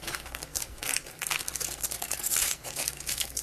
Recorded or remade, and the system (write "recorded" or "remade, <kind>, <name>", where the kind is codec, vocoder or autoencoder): remade, codec, SNAC